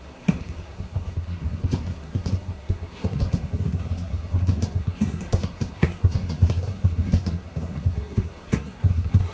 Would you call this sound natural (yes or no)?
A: no